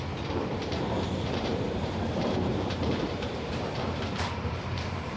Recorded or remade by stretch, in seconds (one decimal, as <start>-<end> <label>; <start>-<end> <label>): 0.0-5.2 remade